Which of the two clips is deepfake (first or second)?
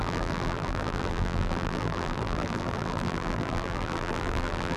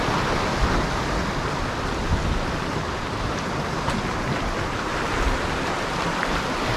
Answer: first